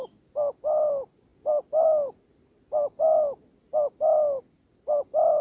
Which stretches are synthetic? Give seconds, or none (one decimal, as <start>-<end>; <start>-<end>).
none